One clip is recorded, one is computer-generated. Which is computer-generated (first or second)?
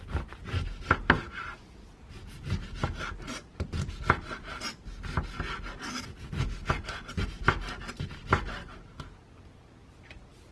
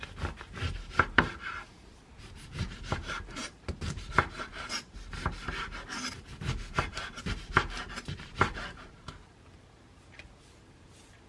second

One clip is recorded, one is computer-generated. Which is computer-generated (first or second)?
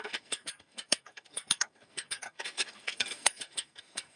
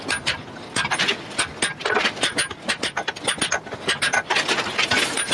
first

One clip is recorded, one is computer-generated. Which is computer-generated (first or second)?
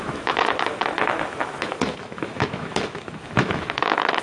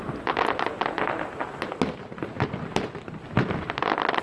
first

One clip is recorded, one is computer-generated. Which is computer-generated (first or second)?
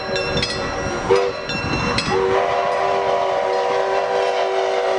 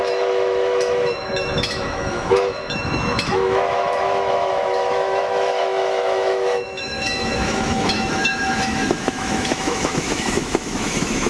second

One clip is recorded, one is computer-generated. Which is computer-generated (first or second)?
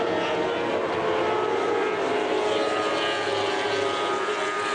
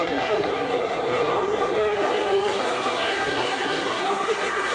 second